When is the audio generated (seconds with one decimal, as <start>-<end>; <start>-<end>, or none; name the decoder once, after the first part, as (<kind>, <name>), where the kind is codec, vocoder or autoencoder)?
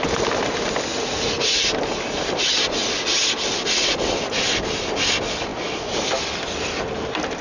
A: 0.9-1.7 (vocoder, Vocos)